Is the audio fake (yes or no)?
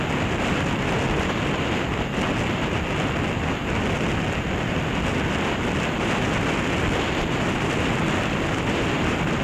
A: no